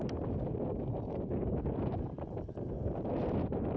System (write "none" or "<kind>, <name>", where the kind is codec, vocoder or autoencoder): none